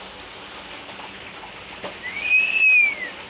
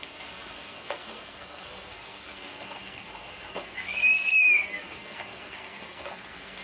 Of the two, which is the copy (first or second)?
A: second